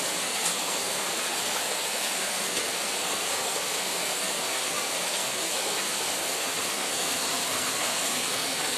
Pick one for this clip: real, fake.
fake